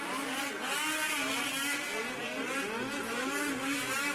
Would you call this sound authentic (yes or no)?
yes